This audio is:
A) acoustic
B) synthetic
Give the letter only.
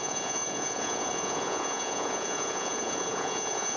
B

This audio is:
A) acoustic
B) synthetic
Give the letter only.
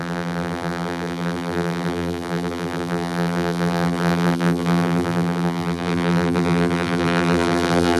B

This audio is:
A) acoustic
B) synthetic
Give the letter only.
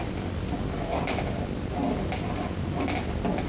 A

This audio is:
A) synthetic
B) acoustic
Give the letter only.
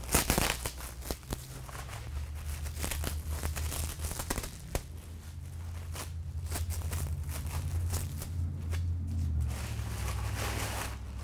B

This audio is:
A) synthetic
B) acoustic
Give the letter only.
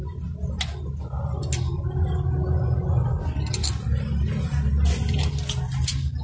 B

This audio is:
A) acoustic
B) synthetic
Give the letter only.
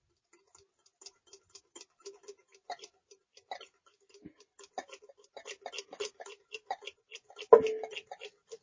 A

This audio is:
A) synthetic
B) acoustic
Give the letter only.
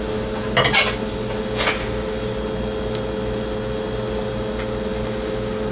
B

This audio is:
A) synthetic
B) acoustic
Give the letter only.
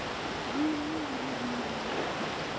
B